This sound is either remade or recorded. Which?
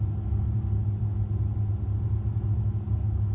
recorded